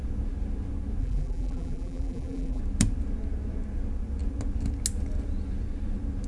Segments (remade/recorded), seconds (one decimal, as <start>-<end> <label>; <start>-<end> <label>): 0.0-1.0 recorded; 1.0-2.6 remade; 2.6-6.3 recorded